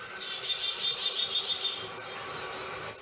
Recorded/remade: recorded